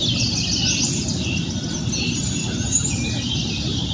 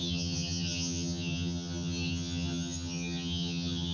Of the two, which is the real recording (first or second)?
first